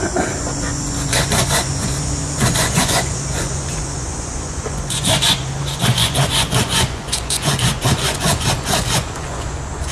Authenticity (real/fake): fake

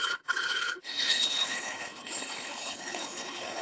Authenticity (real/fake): fake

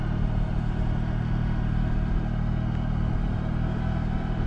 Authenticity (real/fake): real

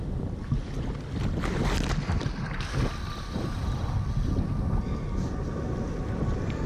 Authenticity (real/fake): real